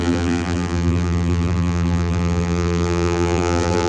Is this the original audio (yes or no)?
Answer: no